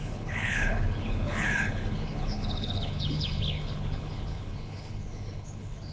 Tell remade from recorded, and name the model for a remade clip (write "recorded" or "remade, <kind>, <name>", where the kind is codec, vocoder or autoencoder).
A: remade, codec, HILCodec